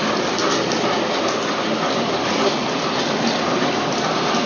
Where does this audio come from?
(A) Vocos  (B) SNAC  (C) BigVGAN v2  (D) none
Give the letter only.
D